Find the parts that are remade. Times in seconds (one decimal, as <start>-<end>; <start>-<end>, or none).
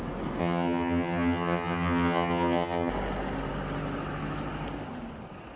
0.4-2.9